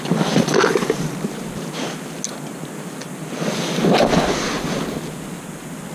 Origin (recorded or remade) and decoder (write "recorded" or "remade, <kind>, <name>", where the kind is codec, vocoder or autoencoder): recorded